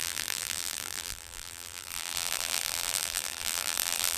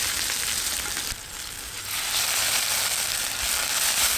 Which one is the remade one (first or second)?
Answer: first